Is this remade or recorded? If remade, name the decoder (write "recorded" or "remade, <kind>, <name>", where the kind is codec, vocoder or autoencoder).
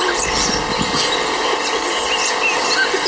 recorded